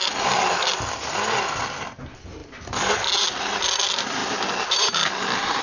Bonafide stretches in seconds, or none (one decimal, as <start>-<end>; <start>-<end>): 0.0-5.6